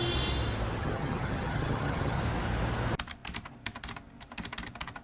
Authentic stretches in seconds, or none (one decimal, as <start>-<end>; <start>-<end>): 0.0-0.8; 2.2-5.0